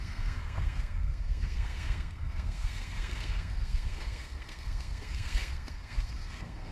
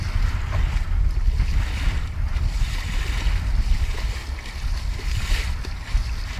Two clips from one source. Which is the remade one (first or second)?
first